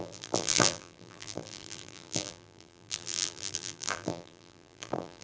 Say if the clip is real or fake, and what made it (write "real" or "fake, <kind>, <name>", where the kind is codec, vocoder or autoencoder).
fake, vocoder, BigVGAN v2